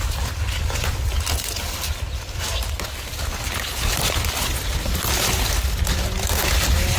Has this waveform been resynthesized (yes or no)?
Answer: no